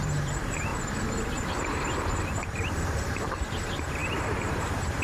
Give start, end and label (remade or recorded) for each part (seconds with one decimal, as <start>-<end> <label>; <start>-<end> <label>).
0.0-0.7 remade; 0.7-1.4 recorded; 1.4-2.1 remade; 2.1-3.1 recorded; 3.1-5.0 remade